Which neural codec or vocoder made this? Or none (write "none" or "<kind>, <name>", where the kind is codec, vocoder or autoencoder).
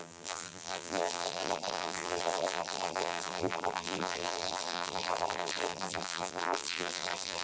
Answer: vocoder, BigVGAN v2